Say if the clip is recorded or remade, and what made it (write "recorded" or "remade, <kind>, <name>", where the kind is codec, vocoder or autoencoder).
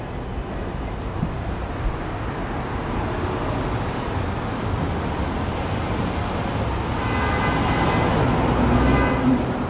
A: recorded